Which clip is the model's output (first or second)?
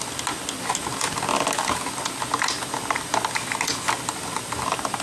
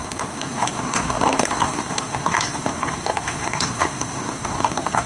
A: second